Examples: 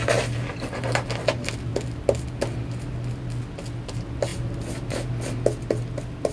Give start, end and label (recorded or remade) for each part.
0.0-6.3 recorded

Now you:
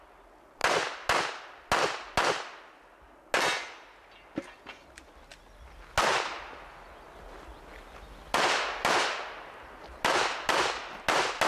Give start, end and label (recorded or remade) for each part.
0.0-11.5 recorded

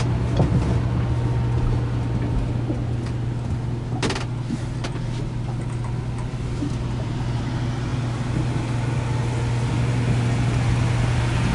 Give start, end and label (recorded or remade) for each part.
0.0-6.3 recorded; 6.3-7.4 remade; 7.4-11.5 recorded

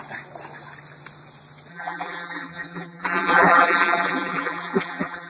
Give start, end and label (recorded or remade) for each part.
0.0-1.7 recorded; 1.7-5.3 remade

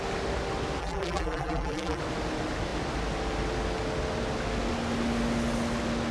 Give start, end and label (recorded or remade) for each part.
0.0-0.8 recorded; 0.8-2.0 remade; 2.0-6.1 recorded

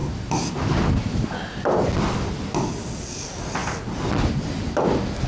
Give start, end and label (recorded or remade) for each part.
0.0-5.3 recorded

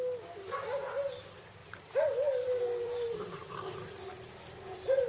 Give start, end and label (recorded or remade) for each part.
0.0-1.6 recorded; 1.6-3.7 remade; 3.7-5.1 recorded